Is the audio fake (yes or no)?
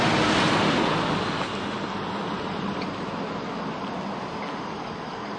no